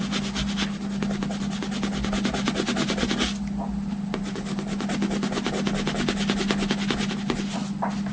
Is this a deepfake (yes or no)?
no